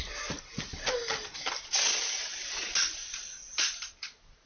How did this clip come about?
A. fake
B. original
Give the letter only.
B